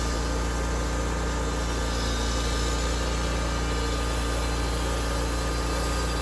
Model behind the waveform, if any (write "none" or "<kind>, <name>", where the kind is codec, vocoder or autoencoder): none